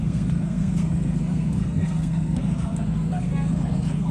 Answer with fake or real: fake